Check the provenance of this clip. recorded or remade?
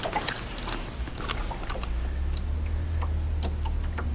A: recorded